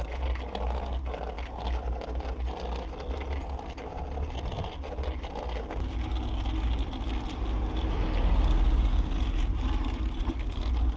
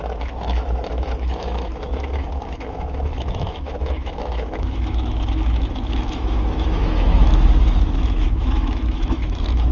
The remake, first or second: second